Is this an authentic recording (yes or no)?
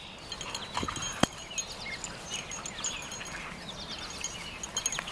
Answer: yes